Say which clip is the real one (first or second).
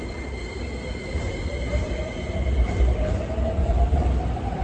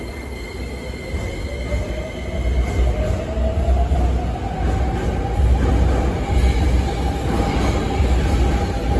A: second